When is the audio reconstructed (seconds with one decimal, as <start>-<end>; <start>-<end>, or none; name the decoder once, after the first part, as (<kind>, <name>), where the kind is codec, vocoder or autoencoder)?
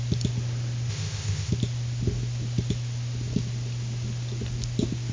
0.9-1.5 (codec, ZipCodec)